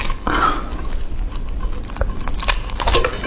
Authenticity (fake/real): real